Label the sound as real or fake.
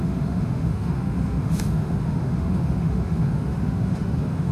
fake